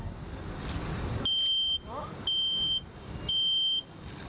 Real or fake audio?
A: real